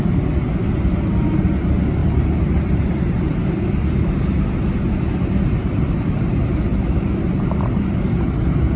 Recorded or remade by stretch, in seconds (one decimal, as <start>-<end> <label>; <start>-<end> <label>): 0.0-0.6 recorded; 0.6-1.5 remade; 1.5-2.0 recorded; 2.0-3.6 remade; 3.6-5.6 recorded; 5.6-6.3 remade; 6.3-6.7 recorded; 6.7-7.8 remade; 7.8-8.8 recorded